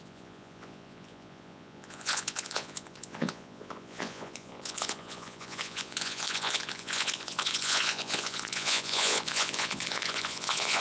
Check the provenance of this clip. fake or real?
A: fake